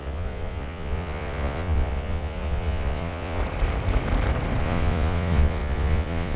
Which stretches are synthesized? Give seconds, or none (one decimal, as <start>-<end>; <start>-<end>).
0.0-3.4; 4.6-6.4